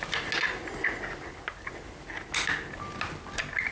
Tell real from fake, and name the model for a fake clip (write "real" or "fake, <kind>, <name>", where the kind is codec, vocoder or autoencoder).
real